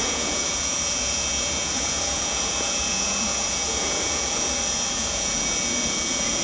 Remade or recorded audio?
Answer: remade